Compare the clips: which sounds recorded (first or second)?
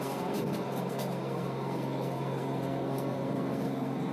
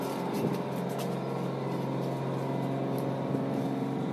second